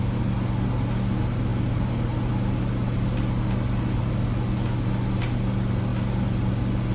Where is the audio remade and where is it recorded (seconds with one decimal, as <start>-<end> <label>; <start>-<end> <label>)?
0.0-6.9 recorded